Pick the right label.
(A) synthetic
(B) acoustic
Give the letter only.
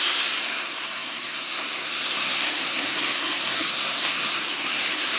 A